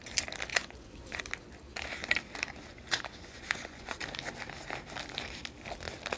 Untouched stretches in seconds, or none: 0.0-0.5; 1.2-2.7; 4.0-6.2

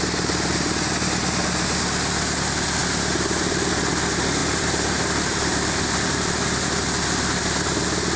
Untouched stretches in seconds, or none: 0.0-4.4; 6.4-8.2

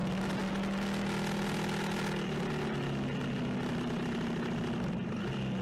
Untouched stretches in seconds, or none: 0.0-5.6

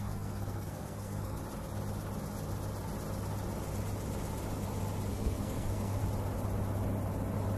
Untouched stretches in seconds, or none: 1.4-5.1; 6.0-7.6

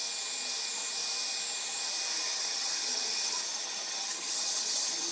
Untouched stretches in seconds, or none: 0.0-2.3

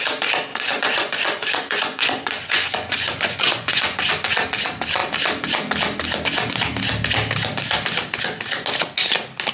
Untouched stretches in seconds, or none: 0.0-0.5; 4.1-9.5

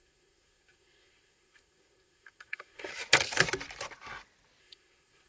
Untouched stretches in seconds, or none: 2.9-4.6

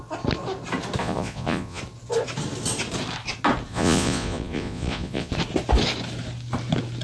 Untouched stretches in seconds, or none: 0.0-1.0; 1.8-3.7; 5.3-7.0